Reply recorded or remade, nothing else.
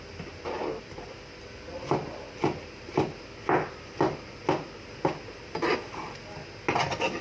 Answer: recorded